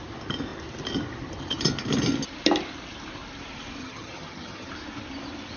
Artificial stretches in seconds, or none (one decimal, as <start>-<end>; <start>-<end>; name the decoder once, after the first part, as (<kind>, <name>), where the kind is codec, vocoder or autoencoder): 3.8-4.7 (vocoder, HiFi-GAN)